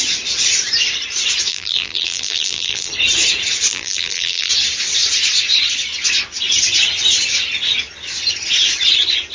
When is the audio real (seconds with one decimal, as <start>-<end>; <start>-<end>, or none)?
0.0-1.5; 2.9-3.7; 4.5-9.3